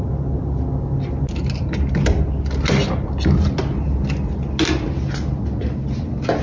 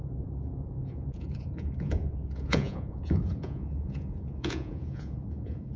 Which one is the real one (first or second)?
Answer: first